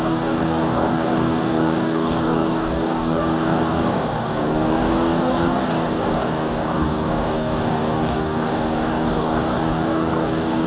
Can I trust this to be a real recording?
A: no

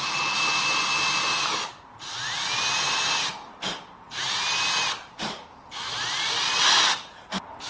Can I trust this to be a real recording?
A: yes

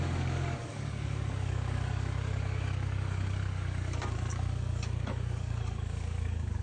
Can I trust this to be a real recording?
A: no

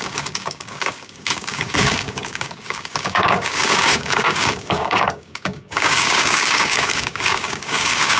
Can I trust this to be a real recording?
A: no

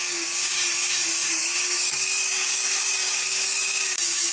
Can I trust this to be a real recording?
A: no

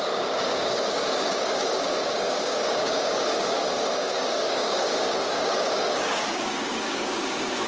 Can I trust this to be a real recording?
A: no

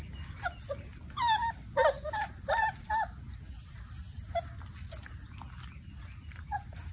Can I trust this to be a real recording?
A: yes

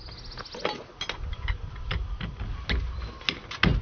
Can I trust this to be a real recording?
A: yes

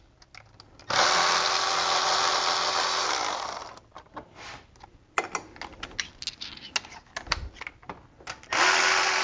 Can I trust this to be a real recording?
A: yes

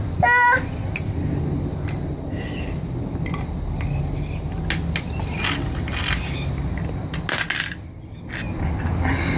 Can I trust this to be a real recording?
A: yes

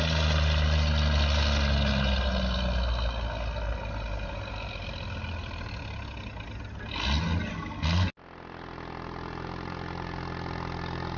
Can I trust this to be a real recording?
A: yes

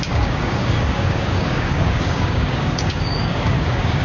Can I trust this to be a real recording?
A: no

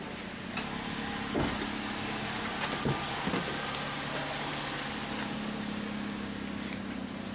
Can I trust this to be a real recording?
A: yes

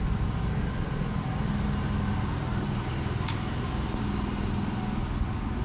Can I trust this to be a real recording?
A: yes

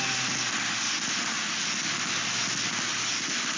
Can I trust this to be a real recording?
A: yes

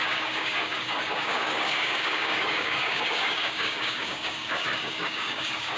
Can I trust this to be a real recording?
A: no